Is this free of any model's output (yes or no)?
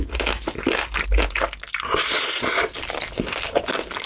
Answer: yes